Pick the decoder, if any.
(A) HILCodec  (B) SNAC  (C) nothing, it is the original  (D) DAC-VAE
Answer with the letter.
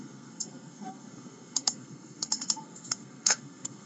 B